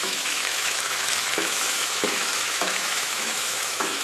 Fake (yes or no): yes